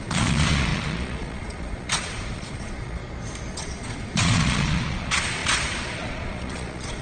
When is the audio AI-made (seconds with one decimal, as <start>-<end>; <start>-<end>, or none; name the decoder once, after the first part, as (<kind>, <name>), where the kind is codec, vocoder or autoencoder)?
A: 0.0-3.0 (vocoder, Vocos); 3.5-7.0